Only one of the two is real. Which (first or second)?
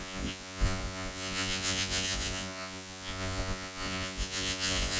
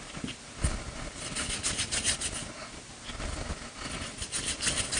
second